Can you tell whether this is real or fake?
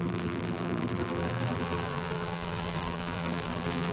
fake